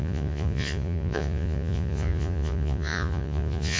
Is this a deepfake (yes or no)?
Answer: yes